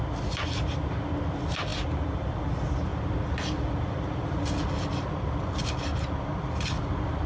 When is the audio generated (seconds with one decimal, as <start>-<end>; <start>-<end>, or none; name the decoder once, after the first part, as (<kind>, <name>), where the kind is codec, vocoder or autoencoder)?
none